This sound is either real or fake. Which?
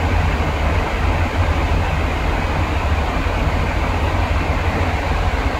real